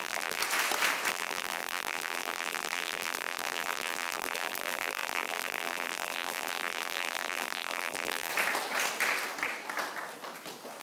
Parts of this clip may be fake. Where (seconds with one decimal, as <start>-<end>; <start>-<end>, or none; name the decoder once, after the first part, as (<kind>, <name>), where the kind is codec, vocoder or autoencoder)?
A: 0.0-0.4 (vocoder, BigVGAN v2); 1.1-8.3

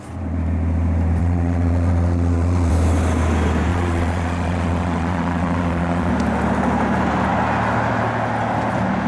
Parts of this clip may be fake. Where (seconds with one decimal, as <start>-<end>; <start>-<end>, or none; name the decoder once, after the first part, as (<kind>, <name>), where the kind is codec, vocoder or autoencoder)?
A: 1.2-2.7 (vocoder, Vocos); 3.7-6.1

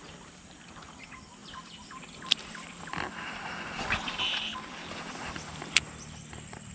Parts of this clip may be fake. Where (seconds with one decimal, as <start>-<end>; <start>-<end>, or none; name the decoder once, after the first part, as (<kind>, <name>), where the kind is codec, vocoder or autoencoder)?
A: none

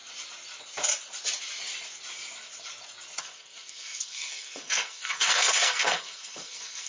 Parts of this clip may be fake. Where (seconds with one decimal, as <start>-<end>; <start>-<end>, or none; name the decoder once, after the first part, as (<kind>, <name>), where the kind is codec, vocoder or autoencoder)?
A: 3.2-6.9 (codec, SNAC)